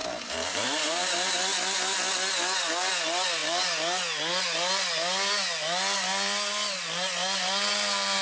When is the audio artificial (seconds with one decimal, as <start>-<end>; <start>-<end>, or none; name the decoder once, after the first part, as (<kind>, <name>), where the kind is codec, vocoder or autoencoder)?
0.0-1.3 (vocoder, BigVGAN v2)